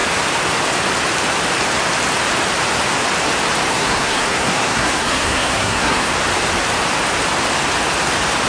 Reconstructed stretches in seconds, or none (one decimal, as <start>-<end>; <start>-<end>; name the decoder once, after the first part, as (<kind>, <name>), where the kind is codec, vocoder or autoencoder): 3.7-6.1 (codec, SNAC)